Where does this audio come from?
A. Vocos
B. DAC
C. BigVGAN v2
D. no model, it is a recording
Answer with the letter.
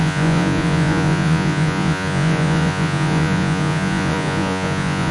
A